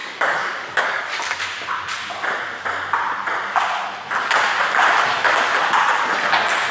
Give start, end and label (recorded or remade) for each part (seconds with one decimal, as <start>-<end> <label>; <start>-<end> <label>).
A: 0.0-1.0 remade; 1.0-6.7 recorded